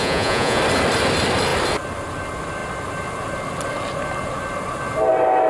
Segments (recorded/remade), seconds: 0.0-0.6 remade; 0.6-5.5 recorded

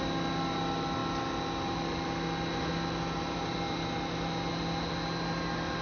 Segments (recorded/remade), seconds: 0.0-5.8 recorded

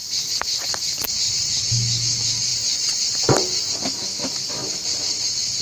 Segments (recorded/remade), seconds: 0.0-1.5 remade; 1.5-2.5 recorded; 2.5-3.7 remade; 3.7-5.6 recorded

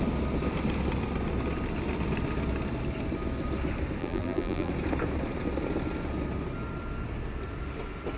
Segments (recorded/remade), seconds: 0.0-4.0 recorded; 4.0-4.7 remade; 4.7-8.2 recorded

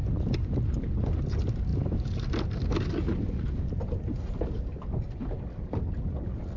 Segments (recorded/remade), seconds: 0.0-6.6 recorded

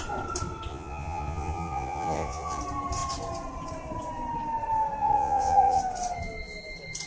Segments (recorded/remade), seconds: 0.0-0.7 recorded; 0.7-2.6 remade; 2.6-5.0 recorded; 5.0-5.8 remade; 5.8-7.1 recorded

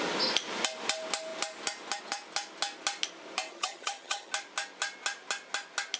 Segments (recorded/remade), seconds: 0.0-3.5 recorded; 3.5-4.3 remade; 4.3-6.0 recorded

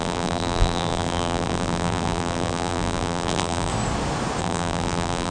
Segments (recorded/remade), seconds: 0.0-3.7 remade; 3.7-4.4 recorded; 4.4-5.3 remade